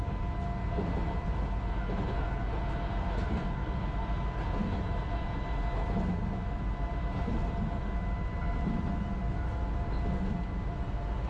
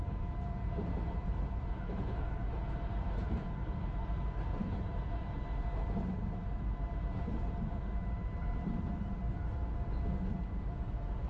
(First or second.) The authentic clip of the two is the first